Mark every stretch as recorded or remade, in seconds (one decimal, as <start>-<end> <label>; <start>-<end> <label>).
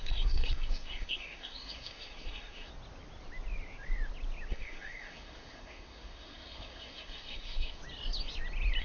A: 0.0-2.7 remade; 2.7-4.5 recorded; 4.5-7.8 remade; 7.8-8.8 recorded